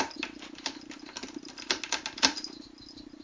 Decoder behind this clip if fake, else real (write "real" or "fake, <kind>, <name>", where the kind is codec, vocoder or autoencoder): real